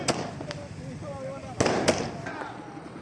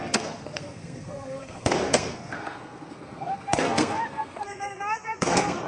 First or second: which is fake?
second